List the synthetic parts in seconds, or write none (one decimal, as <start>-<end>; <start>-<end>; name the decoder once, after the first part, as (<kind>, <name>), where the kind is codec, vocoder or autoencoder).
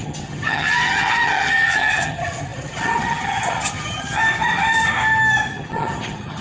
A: 0.0-4.2 (vocoder, HiFi-GAN); 5.5-6.4